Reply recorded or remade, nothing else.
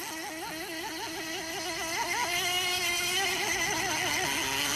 recorded